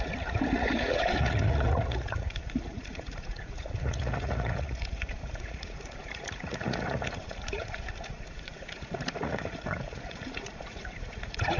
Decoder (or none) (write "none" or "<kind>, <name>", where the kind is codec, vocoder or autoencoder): vocoder, Vocos